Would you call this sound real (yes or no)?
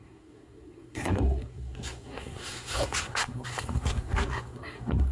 no